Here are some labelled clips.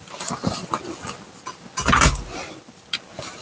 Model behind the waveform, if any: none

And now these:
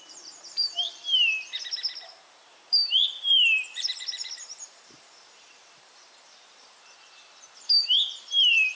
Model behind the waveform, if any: vocoder, BigVGAN v2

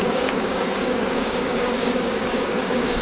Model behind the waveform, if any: codec, DAC